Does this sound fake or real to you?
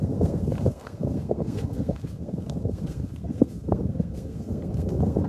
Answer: fake